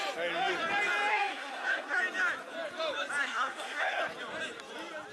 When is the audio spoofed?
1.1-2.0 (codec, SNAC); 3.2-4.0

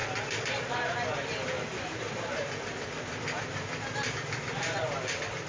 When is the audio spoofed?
none

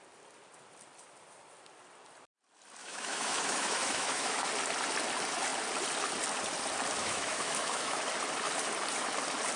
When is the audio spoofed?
2.8-4.5 (autoencoder, DAC-VAE); 7.0-8.0

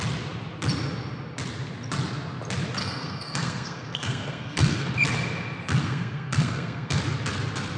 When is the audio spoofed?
2.8-4.9 (codec, SNAC); 5.8-7.0